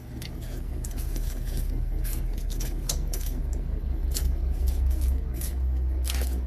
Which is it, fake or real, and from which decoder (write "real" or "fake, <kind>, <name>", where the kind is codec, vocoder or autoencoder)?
fake, codec, SNAC